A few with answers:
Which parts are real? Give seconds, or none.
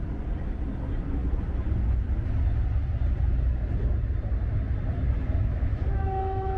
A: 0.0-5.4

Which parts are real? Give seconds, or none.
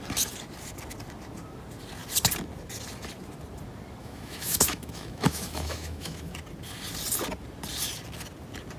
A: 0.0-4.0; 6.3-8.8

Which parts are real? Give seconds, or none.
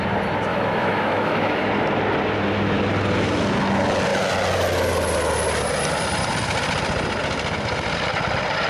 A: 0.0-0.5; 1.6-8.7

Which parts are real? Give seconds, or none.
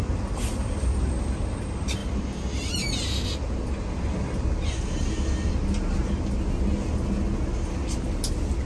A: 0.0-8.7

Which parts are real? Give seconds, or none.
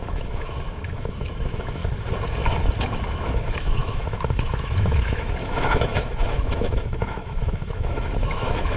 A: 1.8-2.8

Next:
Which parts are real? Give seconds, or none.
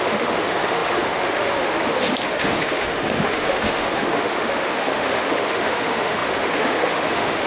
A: none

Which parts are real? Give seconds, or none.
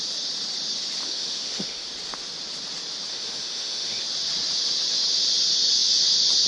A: 0.0-1.0; 1.9-3.1; 4.0-6.5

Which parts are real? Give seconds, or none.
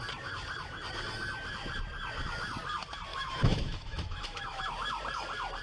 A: 0.0-3.1; 4.6-5.6